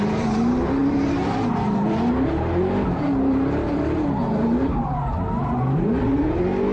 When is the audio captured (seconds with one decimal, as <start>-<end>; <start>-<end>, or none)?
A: 4.7-6.3